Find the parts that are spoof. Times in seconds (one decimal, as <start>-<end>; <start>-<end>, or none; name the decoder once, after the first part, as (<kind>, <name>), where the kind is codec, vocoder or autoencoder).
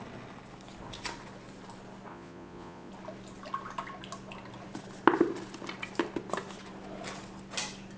2.1-2.9 (vocoder, Vocos)